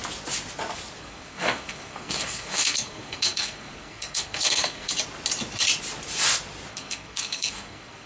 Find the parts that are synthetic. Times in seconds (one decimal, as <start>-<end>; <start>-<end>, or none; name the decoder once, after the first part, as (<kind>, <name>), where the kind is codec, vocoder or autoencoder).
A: 1.0-4.9 (codec, SNAC); 6.7-8.1